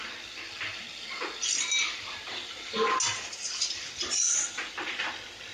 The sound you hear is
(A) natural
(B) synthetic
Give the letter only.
A